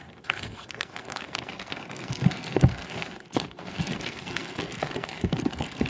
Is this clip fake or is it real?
fake